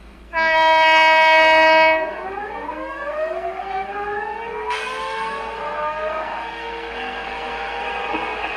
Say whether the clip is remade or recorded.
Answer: remade